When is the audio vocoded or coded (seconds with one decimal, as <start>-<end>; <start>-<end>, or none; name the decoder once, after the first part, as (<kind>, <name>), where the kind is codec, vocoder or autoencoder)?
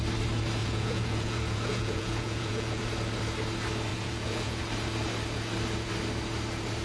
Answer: 0.6-2.8 (vocoder, Vocos); 3.9-4.6